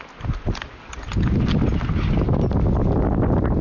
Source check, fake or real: real